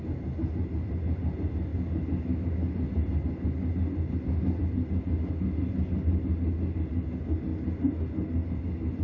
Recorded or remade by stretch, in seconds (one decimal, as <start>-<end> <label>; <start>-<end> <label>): 0.0-9.0 recorded